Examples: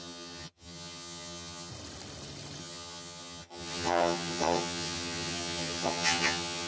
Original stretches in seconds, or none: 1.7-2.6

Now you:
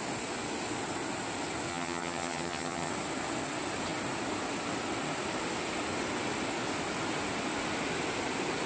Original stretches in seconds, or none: 0.0-1.7; 2.9-8.7

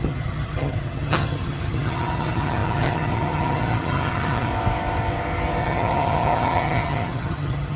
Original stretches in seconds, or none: 4.5-5.6

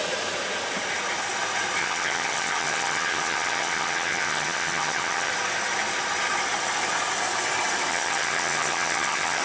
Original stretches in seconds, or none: 0.0-1.8; 5.3-7.9

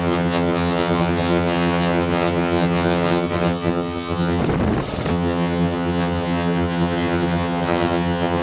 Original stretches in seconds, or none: 4.4-5.1

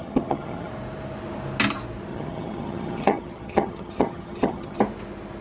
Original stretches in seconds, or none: 0.7-2.1; 4.8-5.4

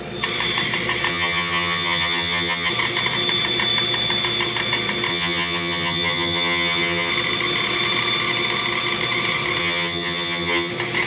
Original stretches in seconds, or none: 0.0-1.1; 2.7-5.1; 7.1-9.6; 10.7-11.1

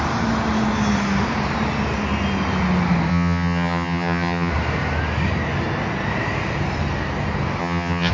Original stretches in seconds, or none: 0.0-3.1; 4.5-7.6